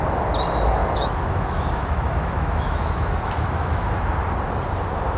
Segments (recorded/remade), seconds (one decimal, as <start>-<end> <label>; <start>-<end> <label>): 0.0-0.8 recorded; 0.8-3.9 remade; 3.9-5.2 recorded